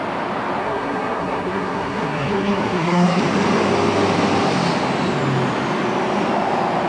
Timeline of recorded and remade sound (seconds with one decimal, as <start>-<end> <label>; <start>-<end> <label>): 0.0-0.6 recorded; 0.6-3.2 remade; 3.2-6.9 recorded